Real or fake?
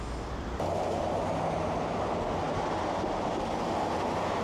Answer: real